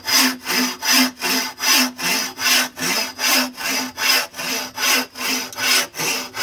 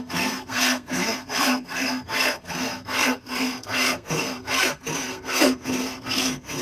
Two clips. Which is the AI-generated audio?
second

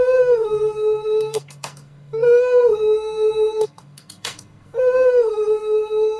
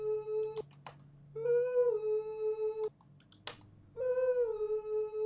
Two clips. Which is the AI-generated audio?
first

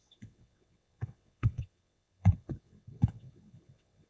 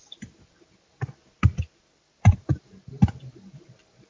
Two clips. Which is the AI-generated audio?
first